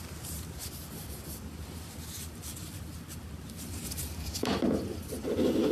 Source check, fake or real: real